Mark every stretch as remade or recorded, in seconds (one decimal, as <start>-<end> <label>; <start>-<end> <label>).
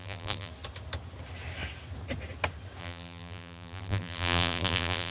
0.0-0.5 remade; 0.5-2.8 recorded; 2.8-5.1 remade